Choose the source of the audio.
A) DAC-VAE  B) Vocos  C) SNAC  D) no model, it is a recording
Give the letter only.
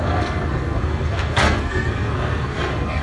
C